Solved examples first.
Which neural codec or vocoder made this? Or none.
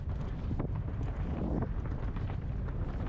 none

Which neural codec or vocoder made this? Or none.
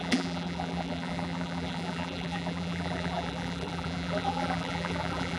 vocoder, BigVGAN v2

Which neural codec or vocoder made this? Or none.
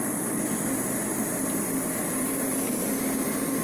none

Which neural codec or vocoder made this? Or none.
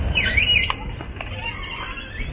vocoder, BigVGAN v2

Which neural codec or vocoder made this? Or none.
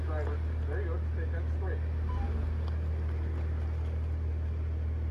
none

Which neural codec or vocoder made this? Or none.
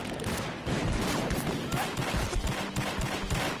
vocoder, BigVGAN v2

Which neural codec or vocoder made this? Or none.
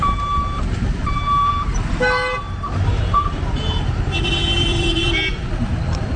vocoder, BigVGAN v2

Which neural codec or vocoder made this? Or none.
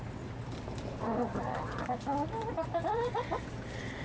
none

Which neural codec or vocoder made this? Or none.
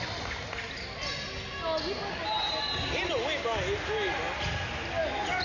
none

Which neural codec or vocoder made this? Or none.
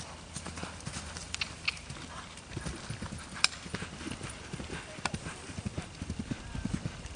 none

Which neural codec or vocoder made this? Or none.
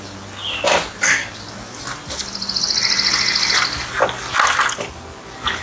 none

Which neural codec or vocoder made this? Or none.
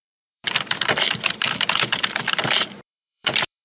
vocoder, BigVGAN v2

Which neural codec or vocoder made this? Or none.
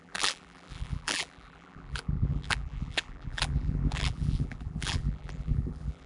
vocoder, BigVGAN v2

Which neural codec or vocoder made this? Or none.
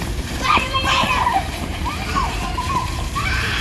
vocoder, BigVGAN v2